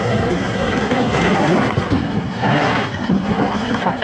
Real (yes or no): no